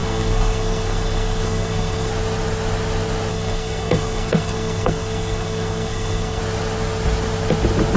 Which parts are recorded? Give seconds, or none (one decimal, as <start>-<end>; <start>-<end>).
2.1-3.3; 6.4-8.0